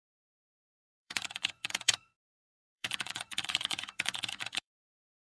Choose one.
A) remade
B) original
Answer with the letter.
A